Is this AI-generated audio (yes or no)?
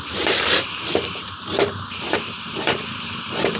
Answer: yes